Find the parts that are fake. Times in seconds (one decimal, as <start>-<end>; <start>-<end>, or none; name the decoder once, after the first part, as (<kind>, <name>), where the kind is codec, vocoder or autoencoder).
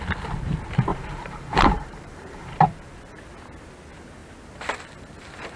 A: 0.9-2.6 (vocoder, BigVGAN v2)